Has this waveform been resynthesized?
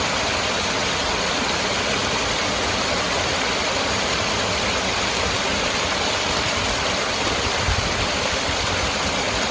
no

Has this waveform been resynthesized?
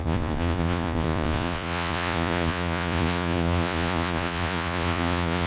yes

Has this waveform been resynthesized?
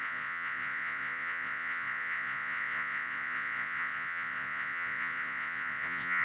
yes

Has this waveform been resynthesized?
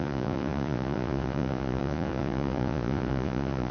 yes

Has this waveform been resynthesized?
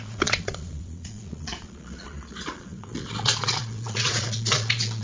yes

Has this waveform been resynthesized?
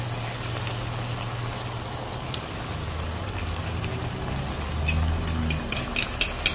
no